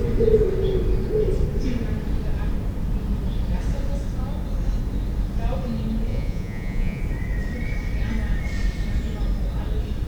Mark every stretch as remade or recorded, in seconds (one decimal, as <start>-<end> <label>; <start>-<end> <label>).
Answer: 0.0-6.1 recorded; 6.1-7.0 remade; 7.0-10.1 recorded